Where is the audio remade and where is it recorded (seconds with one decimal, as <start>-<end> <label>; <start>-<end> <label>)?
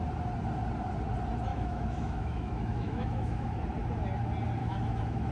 0.0-1.5 recorded; 1.5-3.6 remade; 3.6-4.6 recorded; 4.6-5.3 remade